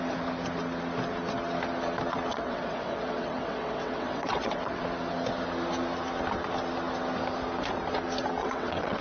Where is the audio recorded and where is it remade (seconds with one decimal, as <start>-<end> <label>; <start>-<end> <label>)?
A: 0.0-2.3 recorded; 2.3-4.8 remade; 4.8-8.4 recorded; 8.4-9.0 remade